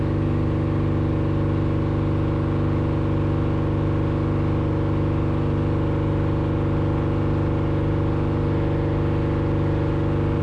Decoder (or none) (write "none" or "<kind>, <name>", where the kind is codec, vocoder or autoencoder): none